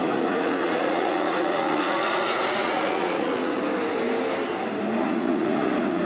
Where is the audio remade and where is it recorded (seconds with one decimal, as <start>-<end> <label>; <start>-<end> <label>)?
0.0-3.6 remade; 3.6-5.0 recorded; 5.0-6.0 remade